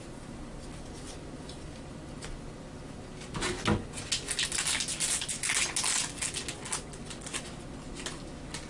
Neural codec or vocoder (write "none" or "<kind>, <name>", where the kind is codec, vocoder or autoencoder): none